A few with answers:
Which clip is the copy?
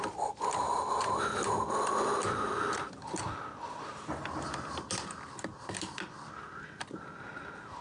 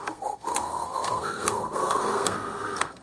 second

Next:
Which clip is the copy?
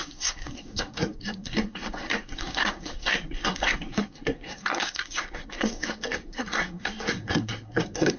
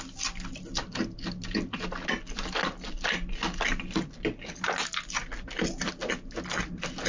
first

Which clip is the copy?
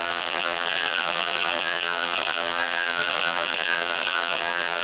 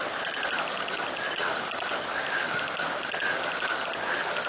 first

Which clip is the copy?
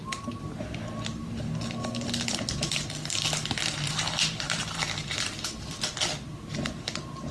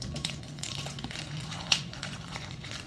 second